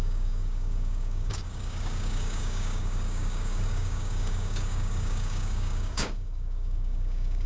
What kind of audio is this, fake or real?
fake